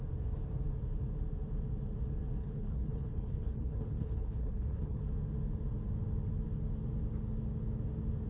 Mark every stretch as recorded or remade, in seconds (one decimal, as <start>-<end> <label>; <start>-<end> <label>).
0.0-2.4 recorded; 2.4-5.0 remade; 5.0-8.3 recorded